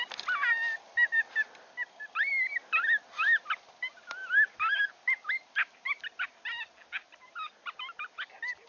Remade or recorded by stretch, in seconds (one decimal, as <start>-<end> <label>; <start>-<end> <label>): 0.0-8.7 recorded